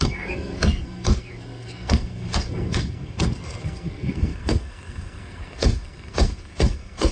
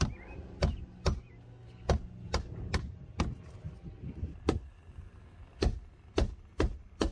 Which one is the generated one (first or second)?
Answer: first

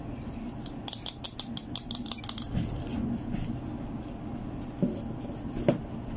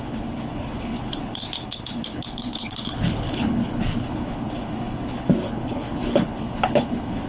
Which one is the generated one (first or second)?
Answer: second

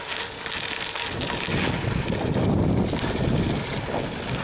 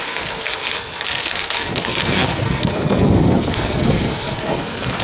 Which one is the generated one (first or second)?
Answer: second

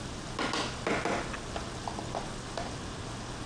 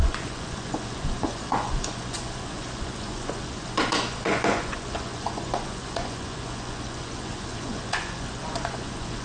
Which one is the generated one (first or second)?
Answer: second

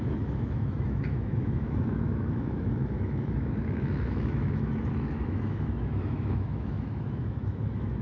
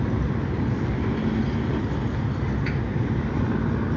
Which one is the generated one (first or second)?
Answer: first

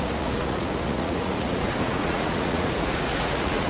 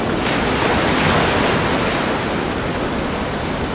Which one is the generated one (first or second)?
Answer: first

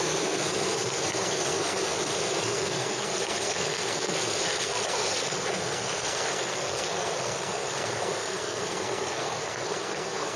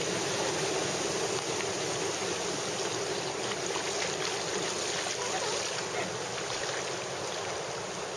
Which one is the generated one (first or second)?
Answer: first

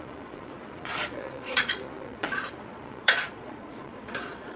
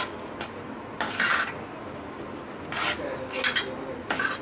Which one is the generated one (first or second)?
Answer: first